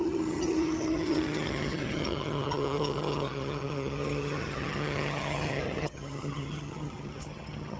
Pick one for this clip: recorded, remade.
remade